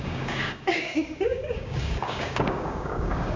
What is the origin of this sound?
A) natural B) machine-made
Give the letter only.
B